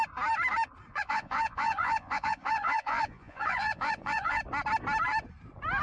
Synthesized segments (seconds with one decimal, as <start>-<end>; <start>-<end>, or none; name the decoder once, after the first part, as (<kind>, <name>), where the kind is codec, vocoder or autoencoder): 0.9-4.4 (vocoder, Vocos)